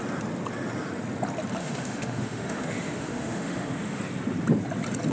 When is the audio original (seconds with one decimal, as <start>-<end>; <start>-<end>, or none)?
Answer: 0.0-1.6; 4.0-5.1